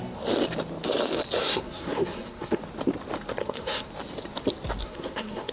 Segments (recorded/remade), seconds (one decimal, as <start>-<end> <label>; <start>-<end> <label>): 0.0-1.4 recorded; 1.4-2.6 remade; 2.6-3.4 recorded; 3.4-3.9 remade; 3.9-4.8 recorded; 4.8-5.5 remade